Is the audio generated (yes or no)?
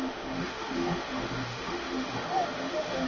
yes